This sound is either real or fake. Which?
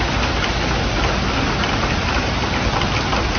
real